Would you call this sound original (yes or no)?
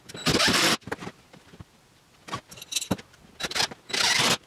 yes